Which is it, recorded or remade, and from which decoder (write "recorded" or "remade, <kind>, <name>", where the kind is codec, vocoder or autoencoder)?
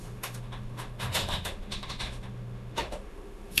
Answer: remade, autoencoder, DAC-VAE